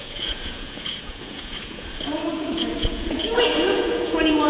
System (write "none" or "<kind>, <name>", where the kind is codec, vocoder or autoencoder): vocoder, Vocos